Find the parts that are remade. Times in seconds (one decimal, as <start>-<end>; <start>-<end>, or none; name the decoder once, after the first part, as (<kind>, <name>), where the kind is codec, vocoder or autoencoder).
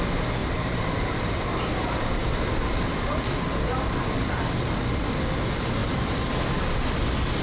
0.4-3.2 (vocoder, BigVGAN v2); 5.8-6.5